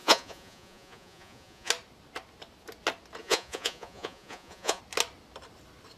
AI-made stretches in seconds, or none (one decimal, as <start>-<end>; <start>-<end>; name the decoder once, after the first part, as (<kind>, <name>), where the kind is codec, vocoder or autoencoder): 0.0-1.7 (vocoder, Vocos); 3.2-4.8